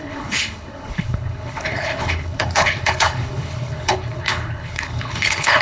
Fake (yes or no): yes